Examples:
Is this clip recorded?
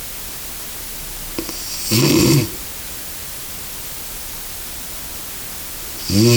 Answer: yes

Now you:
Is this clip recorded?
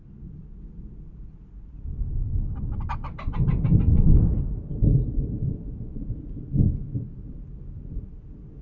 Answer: yes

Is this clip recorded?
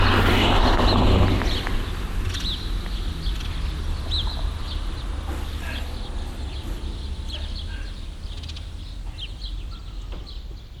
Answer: yes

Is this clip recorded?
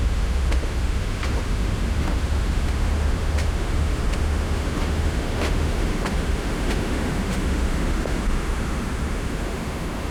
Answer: no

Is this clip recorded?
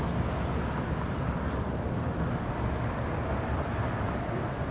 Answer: yes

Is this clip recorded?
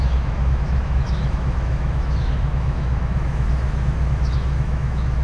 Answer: no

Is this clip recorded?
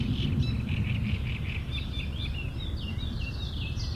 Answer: yes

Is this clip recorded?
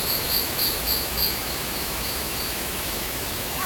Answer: no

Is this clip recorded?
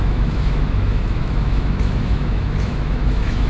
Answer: no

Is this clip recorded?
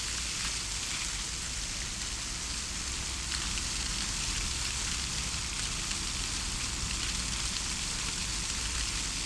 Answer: yes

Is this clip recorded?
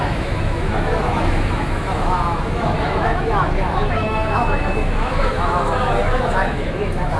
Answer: no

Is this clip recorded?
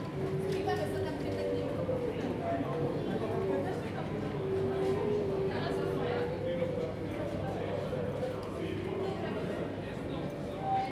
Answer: yes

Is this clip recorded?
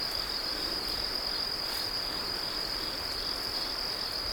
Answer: yes